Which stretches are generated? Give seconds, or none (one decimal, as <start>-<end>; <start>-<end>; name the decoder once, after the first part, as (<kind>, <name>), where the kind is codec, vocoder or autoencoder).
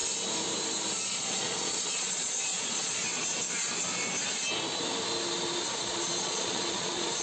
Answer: 1.0-3.0 (vocoder, Vocos); 5.8-7.2